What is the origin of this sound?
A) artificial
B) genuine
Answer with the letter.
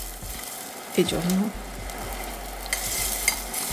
B